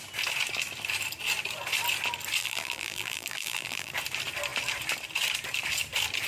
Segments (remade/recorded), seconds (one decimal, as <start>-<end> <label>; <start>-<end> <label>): 0.0-2.4 recorded; 2.4-3.9 remade; 3.9-6.3 recorded